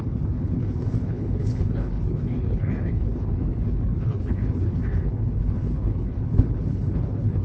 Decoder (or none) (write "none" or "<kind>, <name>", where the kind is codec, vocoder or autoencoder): codec, HILCodec